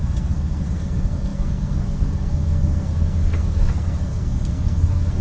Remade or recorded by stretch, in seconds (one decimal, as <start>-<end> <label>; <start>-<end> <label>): 0.0-5.2 remade